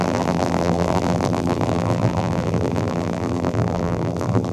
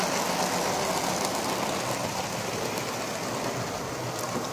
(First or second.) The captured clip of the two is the second